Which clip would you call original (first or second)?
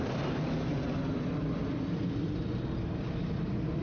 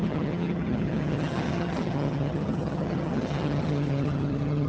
first